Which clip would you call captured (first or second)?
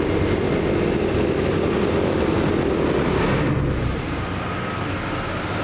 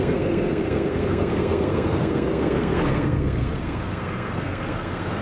first